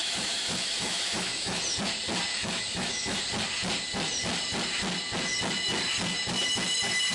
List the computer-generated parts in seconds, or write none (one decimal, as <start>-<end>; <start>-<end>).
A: 0.0-1.6; 2.3-3.2